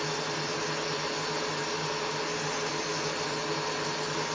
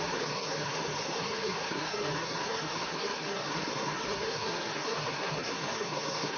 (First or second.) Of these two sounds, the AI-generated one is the second